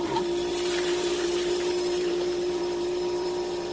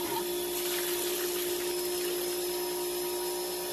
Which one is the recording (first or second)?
second